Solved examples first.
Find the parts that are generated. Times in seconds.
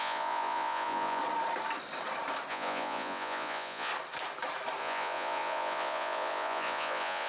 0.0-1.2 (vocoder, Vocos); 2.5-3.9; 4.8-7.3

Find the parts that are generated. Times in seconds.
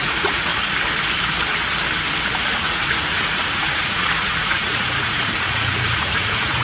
0.0-0.5 (vocoder, Vocos); 2.5-6.6